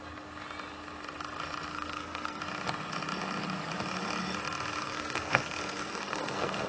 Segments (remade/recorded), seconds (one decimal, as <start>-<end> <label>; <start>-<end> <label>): 0.0-1.7 recorded; 1.7-2.4 remade; 2.4-4.8 recorded; 4.8-6.7 remade